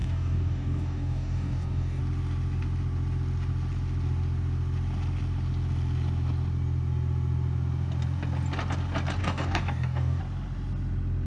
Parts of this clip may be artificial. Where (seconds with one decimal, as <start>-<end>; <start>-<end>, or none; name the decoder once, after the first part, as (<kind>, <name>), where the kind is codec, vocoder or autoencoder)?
0.0-2.0 (codec, DAC); 9.2-10.2